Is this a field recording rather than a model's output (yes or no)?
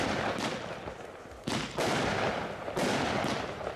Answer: yes